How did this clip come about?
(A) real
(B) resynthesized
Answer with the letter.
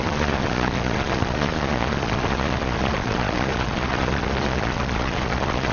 B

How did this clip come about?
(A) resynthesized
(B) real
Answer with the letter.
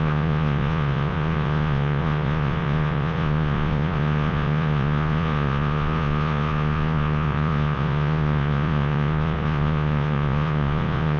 A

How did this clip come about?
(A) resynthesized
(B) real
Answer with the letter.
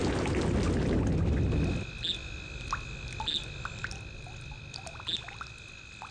B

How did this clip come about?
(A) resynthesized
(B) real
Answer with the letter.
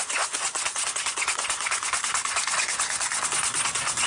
A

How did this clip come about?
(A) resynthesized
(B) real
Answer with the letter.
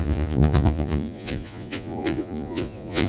A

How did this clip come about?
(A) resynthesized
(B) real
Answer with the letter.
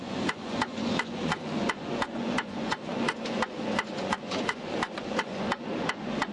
A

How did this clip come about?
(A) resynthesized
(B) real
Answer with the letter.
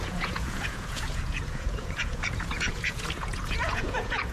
A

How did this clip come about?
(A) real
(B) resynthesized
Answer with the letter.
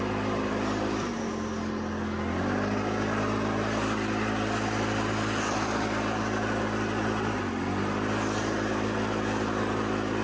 A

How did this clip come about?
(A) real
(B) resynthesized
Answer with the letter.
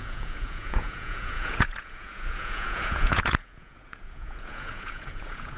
B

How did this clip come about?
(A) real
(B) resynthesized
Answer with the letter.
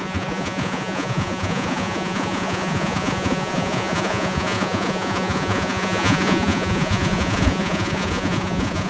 B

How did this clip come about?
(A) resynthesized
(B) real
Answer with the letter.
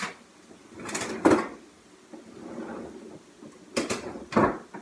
B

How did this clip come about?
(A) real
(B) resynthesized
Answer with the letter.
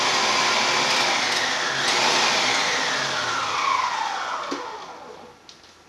A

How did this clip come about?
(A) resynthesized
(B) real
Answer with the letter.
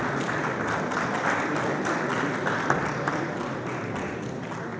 B